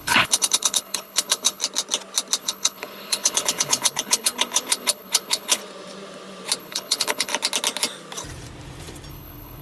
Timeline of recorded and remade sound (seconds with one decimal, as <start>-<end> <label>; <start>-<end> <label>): 0.0-1.6 remade; 1.6-2.4 recorded; 2.4-5.6 remade; 5.6-6.6 recorded; 6.6-7.3 remade; 7.3-9.1 recorded; 9.1-9.6 remade